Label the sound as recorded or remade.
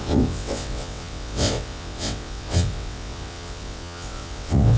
remade